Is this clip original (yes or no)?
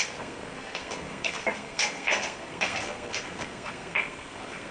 no